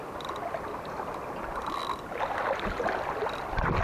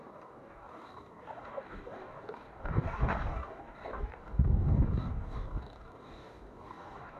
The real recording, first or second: first